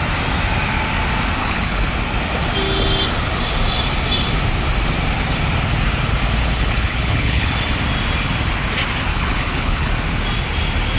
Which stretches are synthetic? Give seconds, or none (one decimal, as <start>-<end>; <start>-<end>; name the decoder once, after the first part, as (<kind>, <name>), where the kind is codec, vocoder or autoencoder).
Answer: 1.4-1.9 (codec, HILCodec); 6.4-7.5; 9.1-9.9